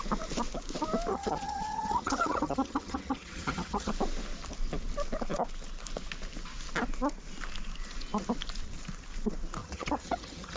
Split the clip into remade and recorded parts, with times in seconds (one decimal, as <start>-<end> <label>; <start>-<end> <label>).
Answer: 0.0-1.1 recorded; 1.1-3.9 remade; 3.9-9.6 recorded; 9.6-10.6 remade